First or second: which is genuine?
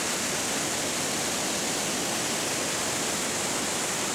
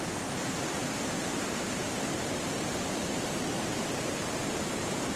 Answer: first